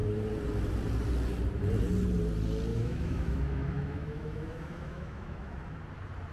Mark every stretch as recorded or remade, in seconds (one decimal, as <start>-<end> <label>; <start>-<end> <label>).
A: 0.0-2.7 recorded; 2.7-5.8 remade; 5.8-6.3 recorded